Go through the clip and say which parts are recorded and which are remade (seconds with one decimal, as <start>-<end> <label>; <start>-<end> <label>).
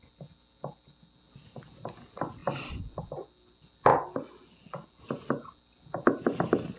0.0-6.8 recorded